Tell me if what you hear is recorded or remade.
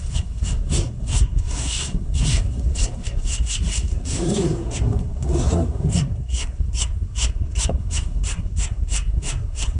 remade